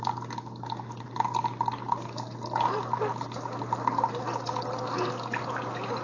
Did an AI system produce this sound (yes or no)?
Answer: no